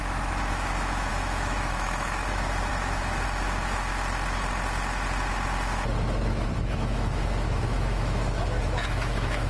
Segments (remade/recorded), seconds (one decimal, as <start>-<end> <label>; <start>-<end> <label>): 0.0-3.9 remade; 3.9-6.7 recorded; 6.7-9.5 remade